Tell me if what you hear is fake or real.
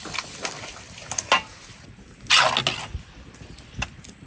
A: real